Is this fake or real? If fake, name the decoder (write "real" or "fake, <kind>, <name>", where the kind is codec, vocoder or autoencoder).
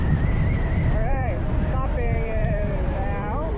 fake, vocoder, BigVGAN v2